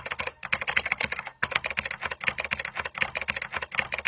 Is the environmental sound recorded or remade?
recorded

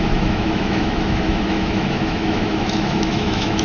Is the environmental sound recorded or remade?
remade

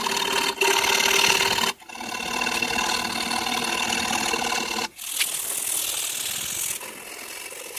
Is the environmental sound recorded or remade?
recorded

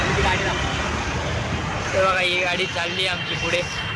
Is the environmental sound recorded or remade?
recorded